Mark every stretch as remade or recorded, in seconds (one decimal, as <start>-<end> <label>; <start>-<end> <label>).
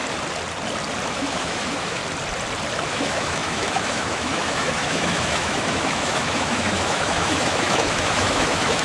0.0-1.1 recorded; 1.1-2.0 remade; 2.0-2.9 recorded; 2.9-8.8 remade